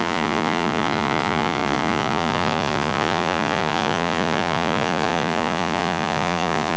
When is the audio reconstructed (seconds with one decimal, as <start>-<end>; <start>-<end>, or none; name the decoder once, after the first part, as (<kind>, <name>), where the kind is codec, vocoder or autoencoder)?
0.0-6.8 (vocoder, Vocos)